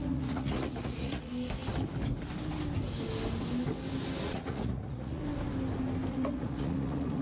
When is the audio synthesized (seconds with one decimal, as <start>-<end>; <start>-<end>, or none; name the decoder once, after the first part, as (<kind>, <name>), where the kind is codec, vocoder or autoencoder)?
0.0-1.3 (vocoder, Vocos); 4.2-5.2; 6.1-7.2